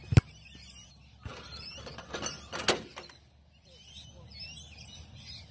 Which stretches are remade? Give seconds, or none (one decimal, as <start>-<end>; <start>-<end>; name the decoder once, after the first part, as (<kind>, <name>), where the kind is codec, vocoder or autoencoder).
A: none